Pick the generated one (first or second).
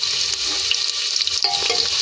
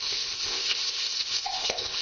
second